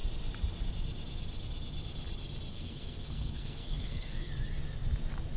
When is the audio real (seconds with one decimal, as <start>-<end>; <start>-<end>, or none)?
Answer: 0.0-2.5; 4.3-5.4